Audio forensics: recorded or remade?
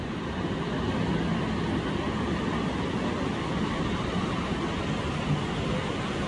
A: recorded